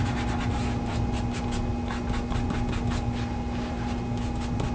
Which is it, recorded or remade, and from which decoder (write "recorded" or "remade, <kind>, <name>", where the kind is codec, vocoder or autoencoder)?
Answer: recorded